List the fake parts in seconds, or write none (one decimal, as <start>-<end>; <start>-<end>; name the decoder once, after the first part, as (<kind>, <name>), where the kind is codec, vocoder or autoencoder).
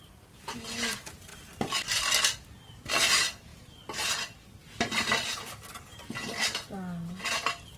none